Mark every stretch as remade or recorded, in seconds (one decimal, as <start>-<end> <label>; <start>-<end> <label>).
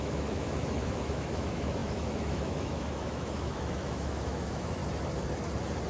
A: 0.0-4.8 remade; 4.8-5.9 recorded